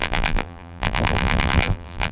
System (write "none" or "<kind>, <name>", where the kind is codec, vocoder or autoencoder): vocoder, BigVGAN v2